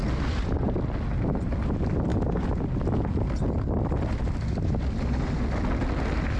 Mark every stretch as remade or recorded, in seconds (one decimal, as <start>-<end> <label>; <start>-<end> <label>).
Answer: 0.0-6.4 recorded

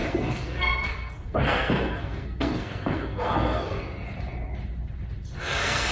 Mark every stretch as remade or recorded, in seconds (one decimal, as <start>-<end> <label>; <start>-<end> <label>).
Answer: 0.0-3.9 remade; 3.9-5.4 recorded; 5.4-5.9 remade

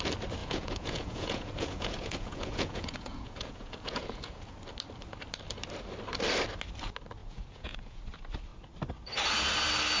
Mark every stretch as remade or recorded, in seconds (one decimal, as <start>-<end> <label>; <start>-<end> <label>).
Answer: 0.0-0.4 recorded; 0.4-4.5 remade; 4.5-7.2 recorded; 7.2-8.0 remade; 8.0-10.0 recorded

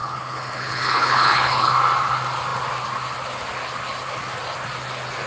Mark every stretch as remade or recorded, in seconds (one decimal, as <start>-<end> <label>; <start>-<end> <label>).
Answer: 0.0-1.7 remade; 1.7-5.3 recorded

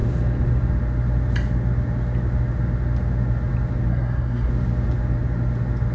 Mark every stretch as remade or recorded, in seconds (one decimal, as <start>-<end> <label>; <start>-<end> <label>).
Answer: 0.0-3.9 recorded; 3.9-4.5 remade; 4.5-5.9 recorded

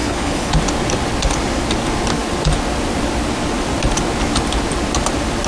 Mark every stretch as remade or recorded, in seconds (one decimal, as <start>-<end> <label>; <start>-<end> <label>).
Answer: 0.0-0.5 remade; 0.5-5.5 recorded

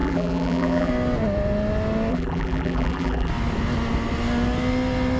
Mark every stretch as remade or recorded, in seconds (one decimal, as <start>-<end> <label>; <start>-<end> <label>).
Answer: 0.0-0.9 remade; 0.9-2.1 recorded; 2.1-3.3 remade; 3.3-5.2 recorded